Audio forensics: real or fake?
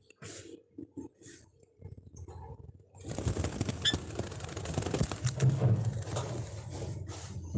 real